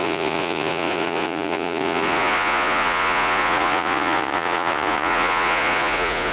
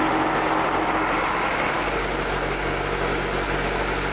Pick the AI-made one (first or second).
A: first